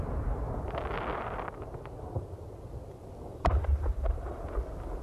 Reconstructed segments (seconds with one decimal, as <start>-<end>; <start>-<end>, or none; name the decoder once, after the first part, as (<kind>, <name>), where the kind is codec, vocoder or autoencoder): 3.3-4.4 (vocoder, BigVGAN v2)